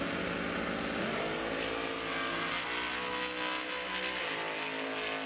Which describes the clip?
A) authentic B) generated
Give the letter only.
A